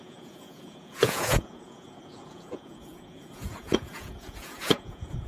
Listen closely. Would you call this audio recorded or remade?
remade